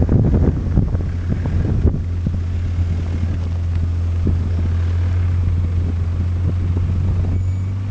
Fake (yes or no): no